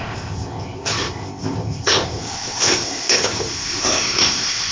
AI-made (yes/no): yes